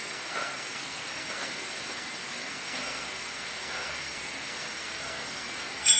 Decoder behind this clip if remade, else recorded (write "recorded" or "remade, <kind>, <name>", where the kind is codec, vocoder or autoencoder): remade, codec, SNAC